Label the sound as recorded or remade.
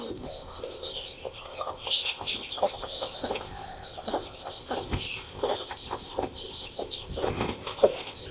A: remade